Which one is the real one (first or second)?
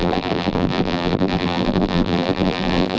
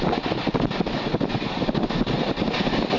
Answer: second